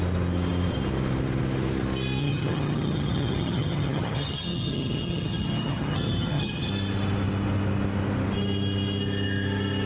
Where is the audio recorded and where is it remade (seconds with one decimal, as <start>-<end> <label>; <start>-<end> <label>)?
0.0-2.2 recorded; 2.2-6.7 remade; 6.7-9.9 recorded